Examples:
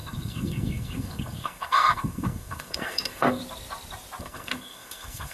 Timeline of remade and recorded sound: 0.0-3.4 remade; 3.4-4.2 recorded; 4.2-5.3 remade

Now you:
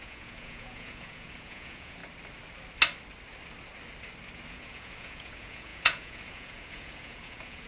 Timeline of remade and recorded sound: 0.0-2.0 remade; 2.0-4.5 recorded; 4.5-7.7 remade

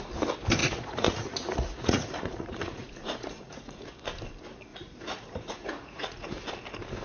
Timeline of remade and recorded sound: 0.0-0.6 recorded; 0.6-3.9 remade; 3.9-4.7 recorded; 4.7-6.4 remade; 6.4-7.0 recorded

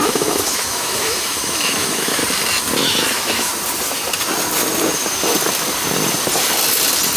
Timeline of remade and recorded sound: 0.0-2.2 remade; 2.2-2.8 recorded; 2.8-3.5 remade; 3.5-7.2 recorded

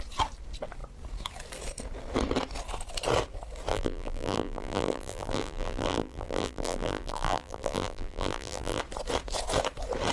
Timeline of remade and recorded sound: 0.0-3.7 recorded; 3.7-8.8 remade; 8.8-10.1 recorded

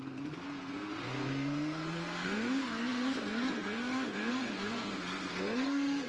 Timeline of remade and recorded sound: 0.0-6.1 remade

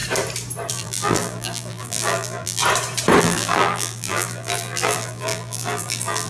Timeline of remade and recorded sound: 0.0-0.7 recorded; 0.7-2.6 remade; 2.6-3.2 recorded; 3.2-6.3 remade

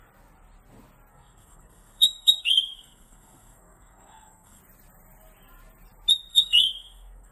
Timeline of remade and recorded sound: 0.0-1.1 recorded; 1.1-4.6 remade; 4.6-6.3 recorded; 6.3-7.3 remade